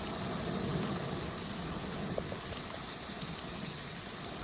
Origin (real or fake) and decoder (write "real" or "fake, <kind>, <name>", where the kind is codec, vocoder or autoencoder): real